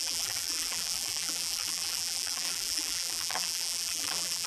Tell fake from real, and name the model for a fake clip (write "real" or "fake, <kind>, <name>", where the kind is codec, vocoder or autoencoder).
fake, vocoder, BigVGAN v2